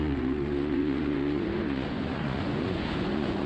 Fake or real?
fake